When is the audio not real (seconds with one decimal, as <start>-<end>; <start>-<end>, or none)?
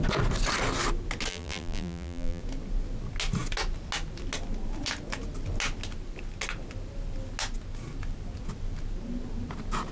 1.3-2.4